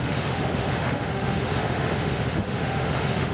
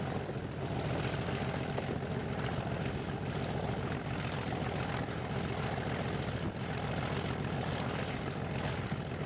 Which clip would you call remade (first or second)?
first